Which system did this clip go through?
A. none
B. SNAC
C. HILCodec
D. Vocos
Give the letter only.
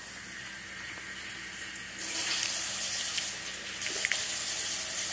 A